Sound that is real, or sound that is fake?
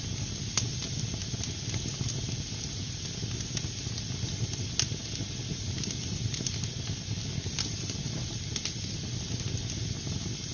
real